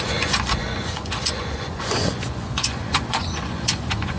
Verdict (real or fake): fake